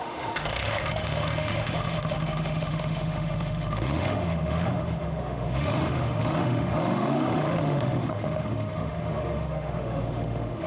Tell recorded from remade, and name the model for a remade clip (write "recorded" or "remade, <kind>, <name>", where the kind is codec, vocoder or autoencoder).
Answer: remade, autoencoder, DAC-VAE